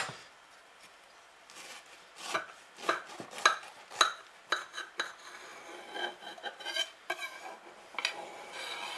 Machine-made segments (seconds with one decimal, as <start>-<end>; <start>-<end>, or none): none